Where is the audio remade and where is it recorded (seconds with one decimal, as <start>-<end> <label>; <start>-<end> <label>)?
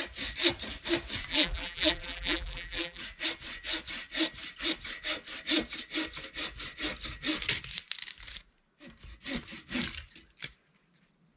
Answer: 0.0-1.3 recorded; 1.3-3.0 remade; 3.0-11.4 recorded